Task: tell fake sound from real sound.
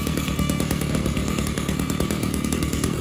fake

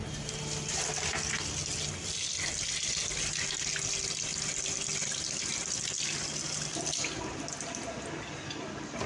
real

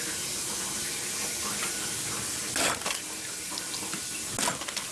real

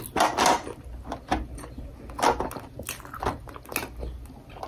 real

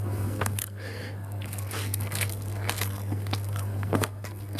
fake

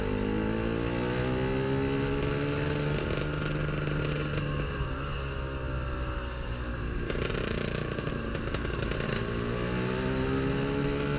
real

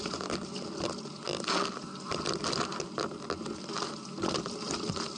real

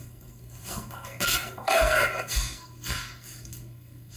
fake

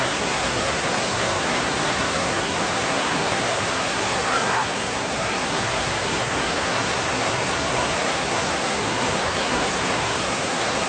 fake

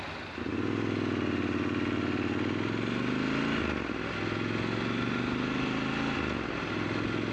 real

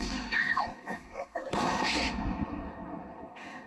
fake